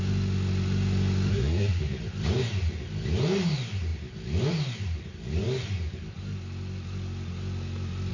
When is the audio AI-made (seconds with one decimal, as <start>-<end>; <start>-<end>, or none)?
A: 1.3-1.8